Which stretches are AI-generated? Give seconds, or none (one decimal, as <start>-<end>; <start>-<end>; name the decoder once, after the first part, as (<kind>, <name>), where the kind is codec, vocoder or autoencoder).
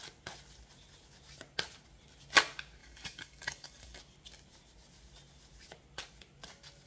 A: 2.8-4.0 (codec, DAC)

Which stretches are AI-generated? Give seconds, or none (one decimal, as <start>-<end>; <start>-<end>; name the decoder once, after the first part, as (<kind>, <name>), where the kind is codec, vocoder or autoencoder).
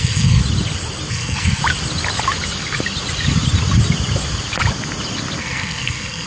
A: 0.0-0.4 (codec, SNAC); 1.1-1.6; 5.4-6.3